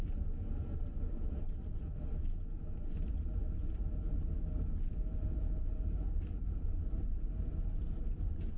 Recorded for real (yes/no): no